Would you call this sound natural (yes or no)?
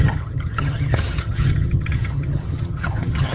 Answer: no